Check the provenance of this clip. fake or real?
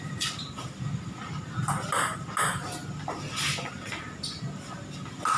real